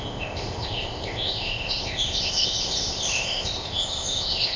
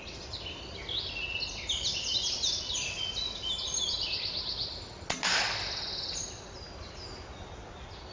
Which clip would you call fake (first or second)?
first